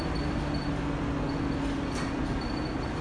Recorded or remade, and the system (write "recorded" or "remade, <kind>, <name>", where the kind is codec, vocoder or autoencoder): recorded